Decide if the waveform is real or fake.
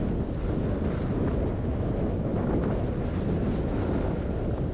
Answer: real